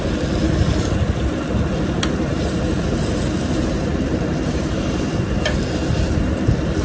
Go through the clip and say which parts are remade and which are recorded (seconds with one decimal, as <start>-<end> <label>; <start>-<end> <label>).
0.0-2.3 recorded; 2.3-5.1 remade; 5.1-6.8 recorded

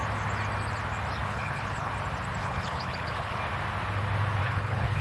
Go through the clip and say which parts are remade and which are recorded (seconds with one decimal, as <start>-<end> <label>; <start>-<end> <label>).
0.0-1.3 recorded; 1.3-1.9 remade; 1.9-2.4 recorded; 2.4-3.4 remade; 3.4-4.4 recorded; 4.4-5.0 remade

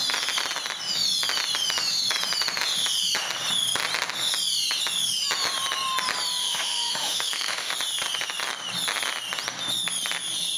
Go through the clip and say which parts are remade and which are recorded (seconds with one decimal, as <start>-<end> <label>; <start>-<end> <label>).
0.0-6.4 recorded; 6.4-7.7 remade; 7.7-10.6 recorded

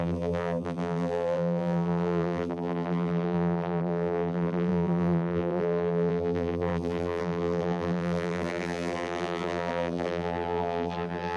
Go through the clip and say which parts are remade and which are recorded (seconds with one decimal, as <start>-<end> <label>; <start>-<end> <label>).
0.0-11.4 remade

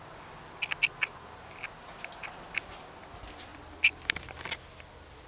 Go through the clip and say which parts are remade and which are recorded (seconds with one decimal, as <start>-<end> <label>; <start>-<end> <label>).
0.0-5.3 recorded